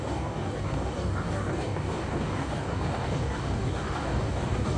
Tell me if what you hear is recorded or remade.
remade